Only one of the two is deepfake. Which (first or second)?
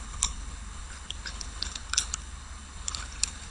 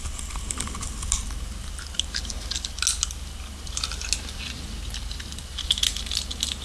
first